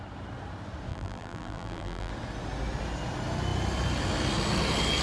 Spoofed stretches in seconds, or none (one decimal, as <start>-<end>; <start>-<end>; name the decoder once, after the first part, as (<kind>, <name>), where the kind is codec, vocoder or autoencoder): 0.9-2.1 (vocoder, BigVGAN v2)

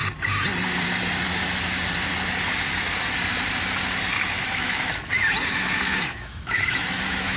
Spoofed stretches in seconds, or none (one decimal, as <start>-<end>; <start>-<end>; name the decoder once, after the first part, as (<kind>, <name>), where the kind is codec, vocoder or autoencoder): 4.4-4.9 (autoencoder, DAC-VAE); 5.5-7.4

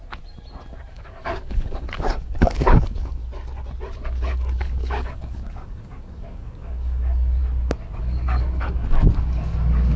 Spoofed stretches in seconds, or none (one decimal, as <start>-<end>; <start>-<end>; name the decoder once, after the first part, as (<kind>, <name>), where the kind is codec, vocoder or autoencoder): 0.9-3.2 (codec, DAC); 4.3-7.4; 8.0-10.0

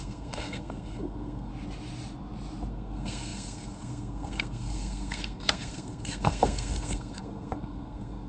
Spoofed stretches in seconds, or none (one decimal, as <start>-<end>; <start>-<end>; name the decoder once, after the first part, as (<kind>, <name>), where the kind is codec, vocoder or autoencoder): 0.0-1.5 (codec, SNAC); 2.7-8.3

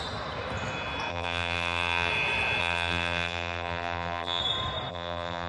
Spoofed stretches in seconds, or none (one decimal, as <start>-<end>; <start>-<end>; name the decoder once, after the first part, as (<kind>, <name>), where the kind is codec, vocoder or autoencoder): 1.1-2.1 (vocoder, BigVGAN v2); 2.6-4.4; 4.9-5.5

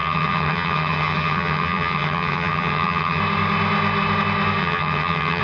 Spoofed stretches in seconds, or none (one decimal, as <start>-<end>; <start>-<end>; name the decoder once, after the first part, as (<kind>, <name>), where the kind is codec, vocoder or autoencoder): 0.0-3.2 (vocoder, HiFi-GAN); 4.6-5.4

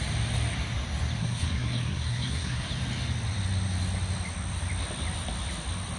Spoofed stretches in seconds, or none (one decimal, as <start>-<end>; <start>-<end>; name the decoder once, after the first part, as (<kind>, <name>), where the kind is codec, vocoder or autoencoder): 1.2-2.7 (codec, SNAC)